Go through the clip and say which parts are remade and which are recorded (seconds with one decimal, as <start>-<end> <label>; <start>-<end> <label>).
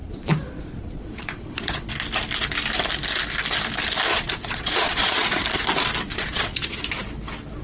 0.0-1.9 remade; 1.9-4.1 recorded; 4.1-5.4 remade; 5.4-6.1 recorded; 6.1-6.8 remade; 6.8-7.6 recorded